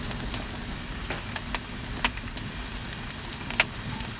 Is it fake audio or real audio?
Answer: real